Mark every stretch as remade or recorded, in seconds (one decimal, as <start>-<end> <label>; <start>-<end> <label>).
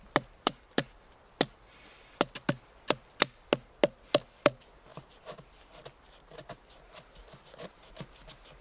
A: 0.0-8.6 recorded